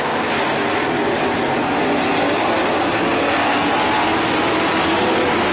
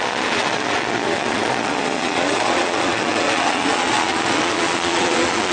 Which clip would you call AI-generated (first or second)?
second